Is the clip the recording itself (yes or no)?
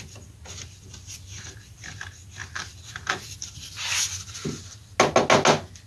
yes